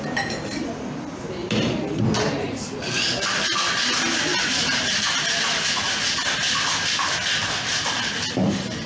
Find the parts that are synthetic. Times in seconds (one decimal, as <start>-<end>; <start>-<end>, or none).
1.4-2.5; 4.3-5.4